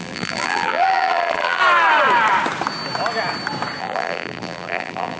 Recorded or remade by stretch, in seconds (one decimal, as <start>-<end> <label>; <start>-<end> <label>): 0.0-1.6 remade; 1.6-3.8 recorded; 3.8-5.2 remade